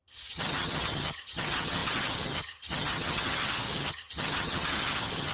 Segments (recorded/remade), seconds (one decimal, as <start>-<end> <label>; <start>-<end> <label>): 0.0-5.3 remade